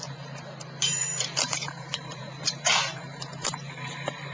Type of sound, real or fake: fake